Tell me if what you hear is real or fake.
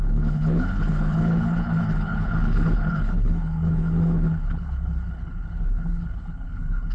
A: fake